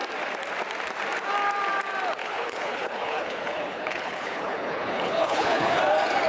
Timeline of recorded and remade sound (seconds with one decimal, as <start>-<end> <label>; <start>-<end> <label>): 0.0-2.2 recorded; 2.2-5.8 remade; 5.8-6.3 recorded